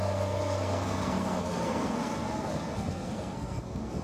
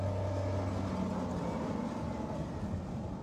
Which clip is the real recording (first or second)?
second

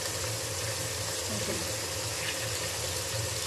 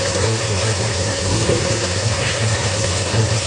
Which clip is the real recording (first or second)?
first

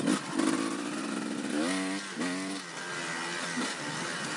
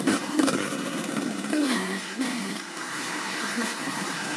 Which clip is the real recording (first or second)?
first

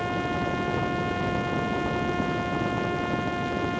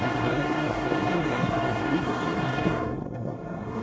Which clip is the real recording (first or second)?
first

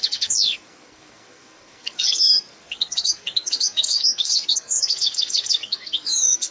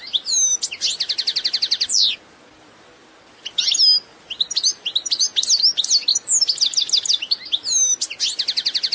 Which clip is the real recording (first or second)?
second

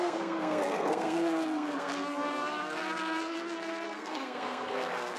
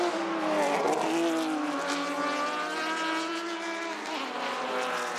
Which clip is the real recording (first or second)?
second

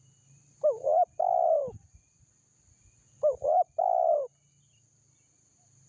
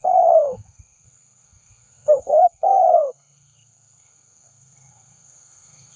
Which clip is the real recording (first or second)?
first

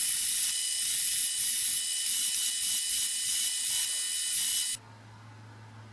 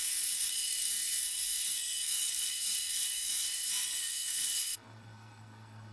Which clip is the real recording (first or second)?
first